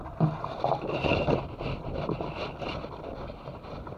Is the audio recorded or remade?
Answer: recorded